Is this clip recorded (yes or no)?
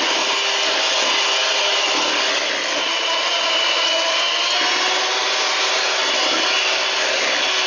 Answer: yes